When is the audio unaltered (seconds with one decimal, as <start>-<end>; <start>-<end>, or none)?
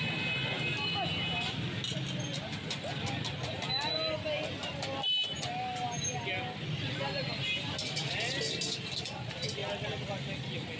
0.0-10.8